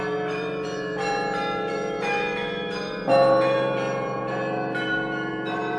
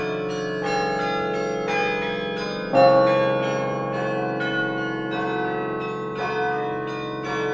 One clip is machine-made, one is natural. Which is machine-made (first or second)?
first